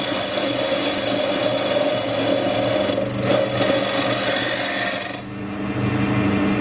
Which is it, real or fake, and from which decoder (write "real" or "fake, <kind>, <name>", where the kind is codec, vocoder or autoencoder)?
real